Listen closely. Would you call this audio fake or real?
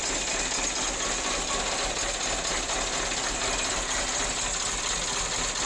real